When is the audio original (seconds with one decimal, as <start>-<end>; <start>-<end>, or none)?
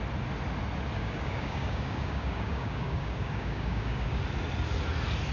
0.0-1.0; 4.2-5.3